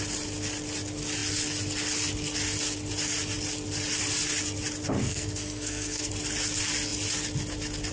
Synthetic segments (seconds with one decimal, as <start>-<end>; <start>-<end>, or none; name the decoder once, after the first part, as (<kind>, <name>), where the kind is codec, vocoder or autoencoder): 5.0-6.1 (codec, SNAC)